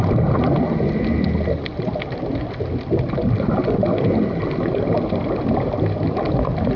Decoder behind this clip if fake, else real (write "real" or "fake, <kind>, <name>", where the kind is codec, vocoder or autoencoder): real